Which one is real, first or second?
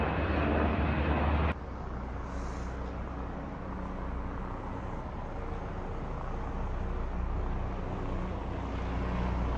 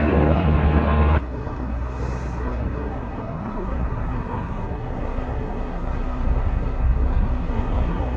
first